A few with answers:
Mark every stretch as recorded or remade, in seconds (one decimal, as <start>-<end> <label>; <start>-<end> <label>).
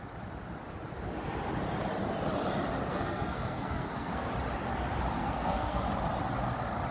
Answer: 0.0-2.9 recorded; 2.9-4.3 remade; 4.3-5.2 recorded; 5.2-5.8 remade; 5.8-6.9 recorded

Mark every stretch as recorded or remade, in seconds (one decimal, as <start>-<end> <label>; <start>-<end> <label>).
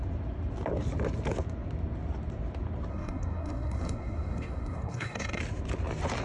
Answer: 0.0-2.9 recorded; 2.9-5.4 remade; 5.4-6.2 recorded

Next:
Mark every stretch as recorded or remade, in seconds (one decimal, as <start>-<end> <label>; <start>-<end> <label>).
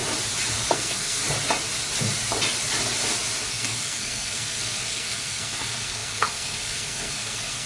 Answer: 0.0-0.7 recorded; 0.7-1.2 remade; 1.2-3.5 recorded; 3.5-7.7 remade